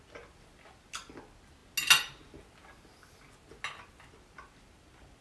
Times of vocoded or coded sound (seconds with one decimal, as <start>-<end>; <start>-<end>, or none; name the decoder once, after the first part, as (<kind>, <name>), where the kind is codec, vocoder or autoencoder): none